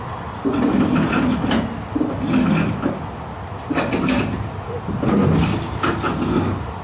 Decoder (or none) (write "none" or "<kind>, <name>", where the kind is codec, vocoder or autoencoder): none